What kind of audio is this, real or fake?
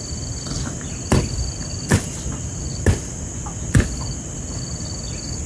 real